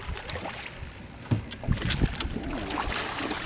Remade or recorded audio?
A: recorded